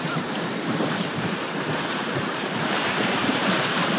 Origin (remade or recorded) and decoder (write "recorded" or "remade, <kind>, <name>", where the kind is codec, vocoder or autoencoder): remade, vocoder, BigVGAN v2